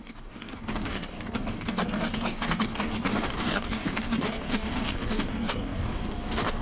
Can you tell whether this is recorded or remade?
remade